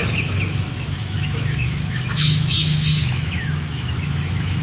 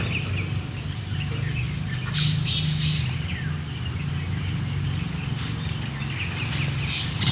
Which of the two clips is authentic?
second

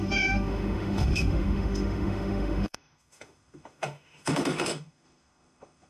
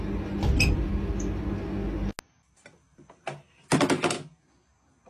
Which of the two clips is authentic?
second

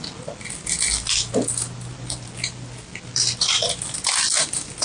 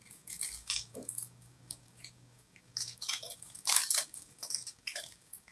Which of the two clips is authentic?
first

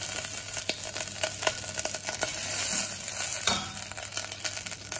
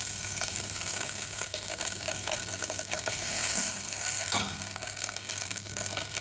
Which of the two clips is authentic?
first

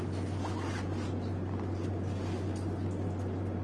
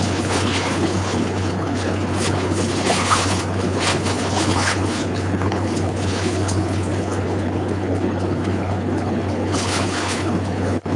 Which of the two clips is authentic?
first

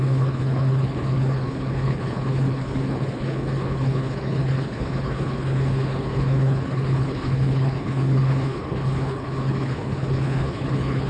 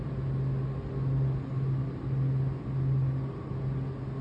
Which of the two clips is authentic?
second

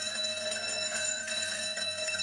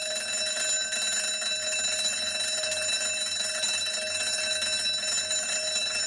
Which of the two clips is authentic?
second